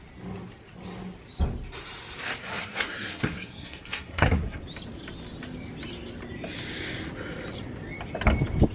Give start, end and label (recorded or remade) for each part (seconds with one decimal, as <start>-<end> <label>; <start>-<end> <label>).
0.0-2.4 recorded; 2.4-4.6 remade; 4.6-8.7 recorded